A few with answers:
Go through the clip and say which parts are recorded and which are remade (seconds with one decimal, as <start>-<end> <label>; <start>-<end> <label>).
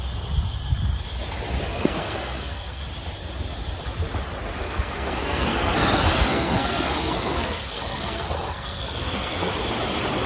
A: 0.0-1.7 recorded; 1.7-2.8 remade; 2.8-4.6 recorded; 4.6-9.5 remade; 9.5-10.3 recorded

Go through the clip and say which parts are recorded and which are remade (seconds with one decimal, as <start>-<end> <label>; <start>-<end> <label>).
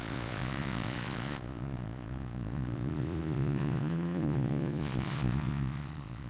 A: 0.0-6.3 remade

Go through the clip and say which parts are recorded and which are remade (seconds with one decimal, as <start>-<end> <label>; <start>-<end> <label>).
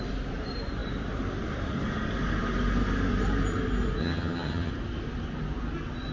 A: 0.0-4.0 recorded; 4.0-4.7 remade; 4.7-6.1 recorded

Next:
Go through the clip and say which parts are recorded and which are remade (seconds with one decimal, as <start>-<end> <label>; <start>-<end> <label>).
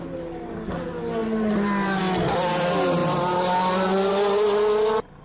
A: 0.0-1.2 recorded; 1.2-2.0 remade; 2.0-5.2 recorded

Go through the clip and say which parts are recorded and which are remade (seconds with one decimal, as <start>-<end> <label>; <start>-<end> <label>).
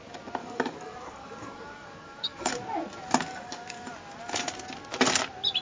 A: 0.0-0.4 recorded; 0.4-2.5 remade; 2.5-3.3 recorded; 3.3-3.9 remade; 3.9-5.6 recorded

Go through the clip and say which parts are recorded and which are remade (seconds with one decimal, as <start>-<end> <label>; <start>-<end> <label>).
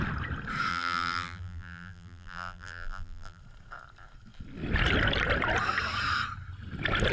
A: 0.0-0.7 recorded; 0.7-3.4 remade; 3.4-7.1 recorded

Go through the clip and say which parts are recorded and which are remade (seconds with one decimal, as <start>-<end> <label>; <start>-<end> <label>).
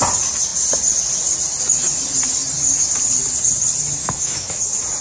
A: 0.0-4.0 recorded; 4.0-4.6 remade; 4.6-5.0 recorded